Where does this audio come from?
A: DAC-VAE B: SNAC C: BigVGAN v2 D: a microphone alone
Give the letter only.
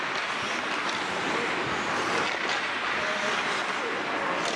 D